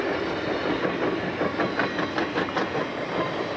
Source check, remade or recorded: recorded